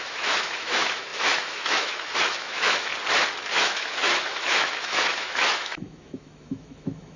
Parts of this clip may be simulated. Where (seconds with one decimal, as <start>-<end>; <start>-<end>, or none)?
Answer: 0.0-2.9; 3.5-7.2